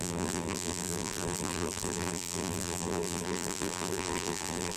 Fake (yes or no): yes